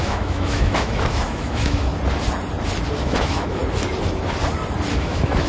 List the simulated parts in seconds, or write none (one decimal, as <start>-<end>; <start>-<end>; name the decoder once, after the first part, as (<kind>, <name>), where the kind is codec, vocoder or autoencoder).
0.0-1.9 (autoencoder, DAC-VAE); 3.0-3.6; 4.9-5.5